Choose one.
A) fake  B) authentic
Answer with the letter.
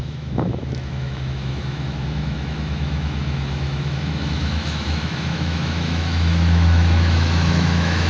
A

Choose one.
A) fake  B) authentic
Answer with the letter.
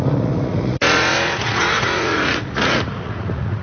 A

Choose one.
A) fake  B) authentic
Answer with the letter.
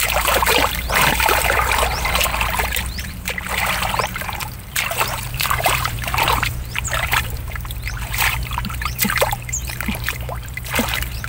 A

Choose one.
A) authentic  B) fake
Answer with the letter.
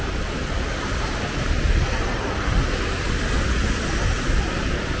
A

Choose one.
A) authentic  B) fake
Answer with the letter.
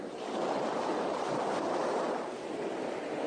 A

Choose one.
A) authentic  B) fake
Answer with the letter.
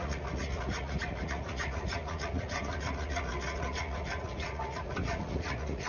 B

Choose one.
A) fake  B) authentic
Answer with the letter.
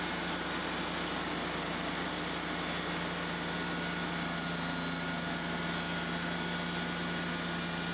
B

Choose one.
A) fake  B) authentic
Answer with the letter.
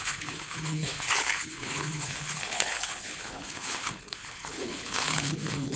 A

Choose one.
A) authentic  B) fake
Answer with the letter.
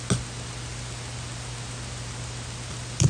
A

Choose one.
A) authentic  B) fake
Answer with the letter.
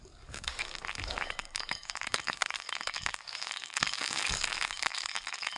B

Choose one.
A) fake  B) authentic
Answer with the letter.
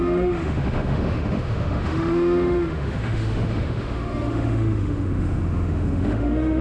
A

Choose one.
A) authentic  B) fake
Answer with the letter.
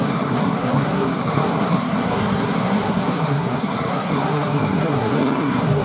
B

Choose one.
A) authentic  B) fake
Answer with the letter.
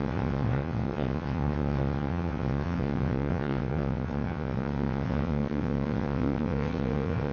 B